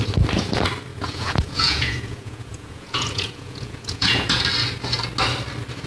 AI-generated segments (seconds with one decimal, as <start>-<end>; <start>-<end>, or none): 0.9-4.4